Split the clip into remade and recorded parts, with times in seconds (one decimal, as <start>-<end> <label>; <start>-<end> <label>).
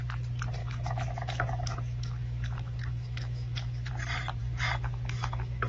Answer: 0.0-0.6 recorded; 0.6-3.9 remade; 3.9-4.4 recorded; 4.4-5.7 remade